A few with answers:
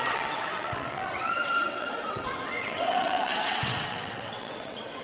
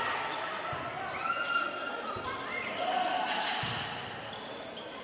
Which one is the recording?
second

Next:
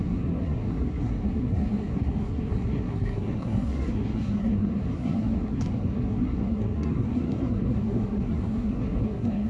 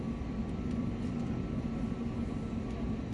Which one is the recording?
second